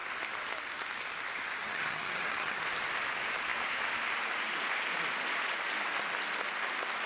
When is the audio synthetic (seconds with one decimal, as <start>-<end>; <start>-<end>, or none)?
1.6-2.6